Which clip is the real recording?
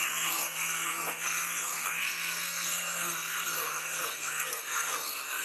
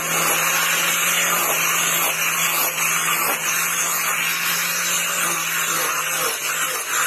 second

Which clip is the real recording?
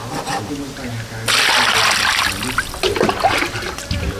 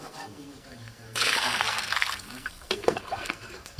first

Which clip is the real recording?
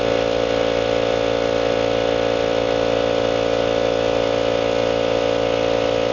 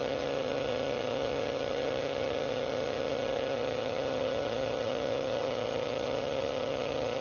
first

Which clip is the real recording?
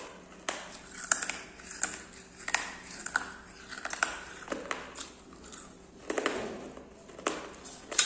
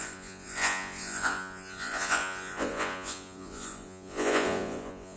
first